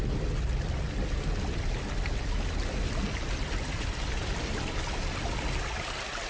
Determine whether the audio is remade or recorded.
recorded